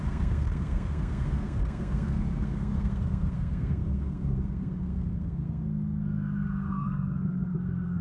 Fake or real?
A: fake